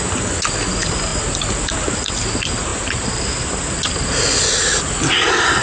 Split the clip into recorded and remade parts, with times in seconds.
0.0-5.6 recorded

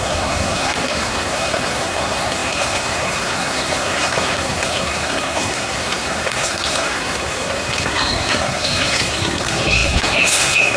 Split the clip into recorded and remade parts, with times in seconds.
0.0-10.8 remade

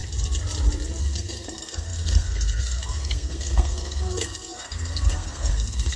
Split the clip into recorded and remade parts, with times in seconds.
0.0-1.0 recorded; 1.0-6.0 remade

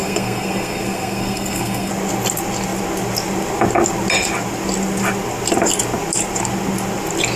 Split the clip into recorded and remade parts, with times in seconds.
0.0-1.9 remade; 1.9-7.4 recorded